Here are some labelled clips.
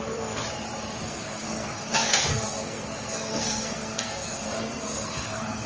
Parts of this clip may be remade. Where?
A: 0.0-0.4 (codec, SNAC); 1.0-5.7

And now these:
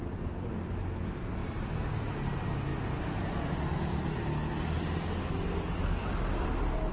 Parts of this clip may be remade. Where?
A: none

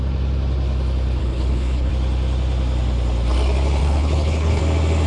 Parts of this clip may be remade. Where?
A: 1.2-1.9 (codec, HILCodec); 3.8-4.6

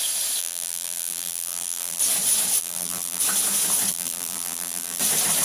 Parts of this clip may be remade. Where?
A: 0.4-2.0 (vocoder, BigVGAN v2); 2.6-3.2; 3.9-5.0

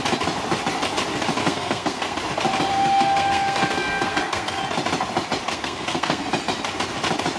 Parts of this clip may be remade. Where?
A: 1.4-2.2 (codec, SNAC); 2.7-4.6; 5.5-6.2

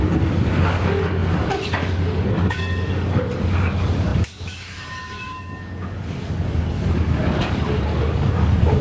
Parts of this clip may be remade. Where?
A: 0.0-8.8 (codec, DAC)

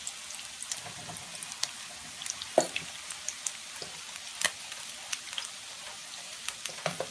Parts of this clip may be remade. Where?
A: none

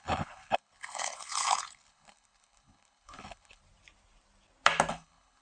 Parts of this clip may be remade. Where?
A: 0.0-3.6 (codec, HILCodec); 4.9-5.4